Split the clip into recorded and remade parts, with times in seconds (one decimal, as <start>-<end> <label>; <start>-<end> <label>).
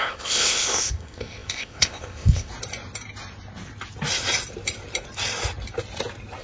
0.0-2.5 remade; 2.5-6.4 recorded